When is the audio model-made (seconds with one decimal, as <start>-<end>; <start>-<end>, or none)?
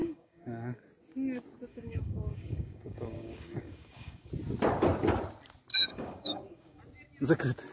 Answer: 0.0-0.8; 1.7-4.3; 5.7-6.8